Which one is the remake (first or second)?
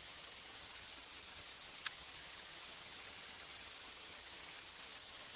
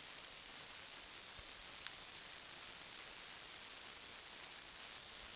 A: first